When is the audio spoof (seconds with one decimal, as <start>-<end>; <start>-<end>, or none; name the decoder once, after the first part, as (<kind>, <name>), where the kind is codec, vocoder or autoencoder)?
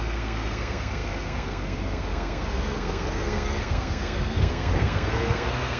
0.0-5.8 (codec, SNAC)